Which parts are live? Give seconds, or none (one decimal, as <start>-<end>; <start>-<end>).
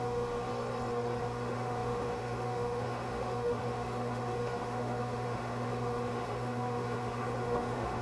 0.5-1.2